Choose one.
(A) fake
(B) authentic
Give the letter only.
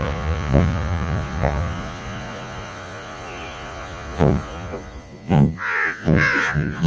A